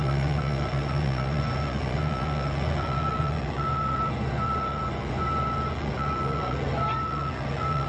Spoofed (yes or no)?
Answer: yes